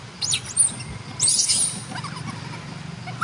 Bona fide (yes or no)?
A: yes